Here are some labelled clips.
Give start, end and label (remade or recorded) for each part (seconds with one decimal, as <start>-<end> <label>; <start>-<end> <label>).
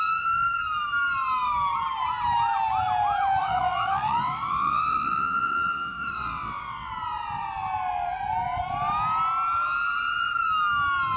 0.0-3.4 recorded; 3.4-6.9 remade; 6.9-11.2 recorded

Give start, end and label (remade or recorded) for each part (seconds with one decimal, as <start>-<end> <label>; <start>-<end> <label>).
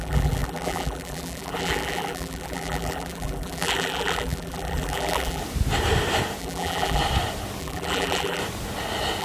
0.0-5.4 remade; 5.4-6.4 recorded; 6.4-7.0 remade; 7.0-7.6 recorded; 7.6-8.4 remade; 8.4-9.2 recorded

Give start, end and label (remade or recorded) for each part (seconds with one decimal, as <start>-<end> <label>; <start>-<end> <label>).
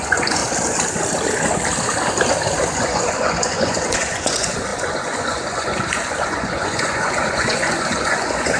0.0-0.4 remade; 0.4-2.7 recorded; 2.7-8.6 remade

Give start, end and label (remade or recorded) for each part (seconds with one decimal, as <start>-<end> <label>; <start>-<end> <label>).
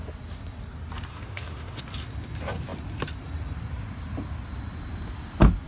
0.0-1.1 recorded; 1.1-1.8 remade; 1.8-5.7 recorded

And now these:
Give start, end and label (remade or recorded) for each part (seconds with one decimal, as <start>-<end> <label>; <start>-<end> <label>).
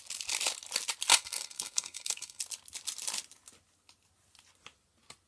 0.0-1.1 recorded; 1.1-2.4 remade; 2.4-5.3 recorded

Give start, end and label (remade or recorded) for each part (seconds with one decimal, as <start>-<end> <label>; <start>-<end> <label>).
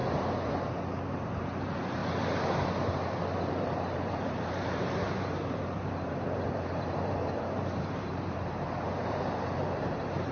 0.0-1.3 recorded; 1.3-2.0 remade; 2.0-3.5 recorded; 3.5-10.3 remade